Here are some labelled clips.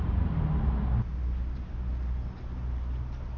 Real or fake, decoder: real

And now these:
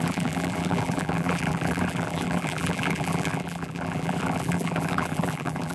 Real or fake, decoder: fake, vocoder, BigVGAN v2